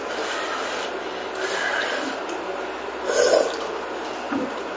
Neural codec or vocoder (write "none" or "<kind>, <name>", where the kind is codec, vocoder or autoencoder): none